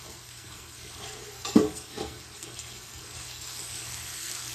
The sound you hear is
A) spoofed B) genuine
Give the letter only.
A